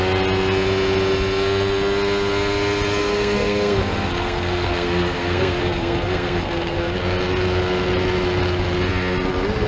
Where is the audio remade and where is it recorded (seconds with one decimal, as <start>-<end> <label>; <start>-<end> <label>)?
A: 0.0-3.0 recorded; 3.0-6.9 remade; 6.9-9.7 recorded